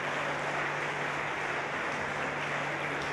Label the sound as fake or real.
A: real